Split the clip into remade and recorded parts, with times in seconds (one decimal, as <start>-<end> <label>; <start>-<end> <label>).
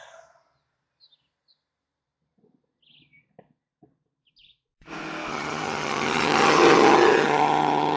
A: 0.0-5.3 recorded; 5.3-8.0 remade